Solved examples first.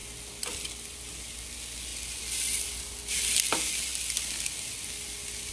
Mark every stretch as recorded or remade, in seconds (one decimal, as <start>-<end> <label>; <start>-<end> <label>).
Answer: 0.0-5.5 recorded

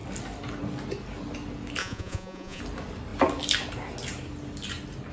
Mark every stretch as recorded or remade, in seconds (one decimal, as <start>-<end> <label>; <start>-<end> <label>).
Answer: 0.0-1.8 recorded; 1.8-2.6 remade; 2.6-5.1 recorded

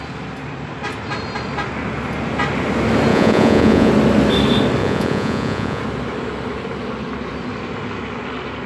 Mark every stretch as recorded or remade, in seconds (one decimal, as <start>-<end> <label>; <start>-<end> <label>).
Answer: 0.0-3.1 recorded; 3.1-3.9 remade; 3.9-4.8 recorded; 4.8-5.8 remade; 5.8-8.7 recorded

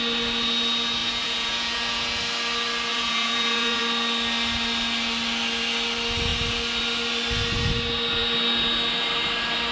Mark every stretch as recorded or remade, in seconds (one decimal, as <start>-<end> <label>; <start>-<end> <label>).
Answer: 0.0-1.0 recorded; 1.0-2.2 remade; 2.2-2.9 recorded; 2.9-3.8 remade; 3.8-9.7 recorded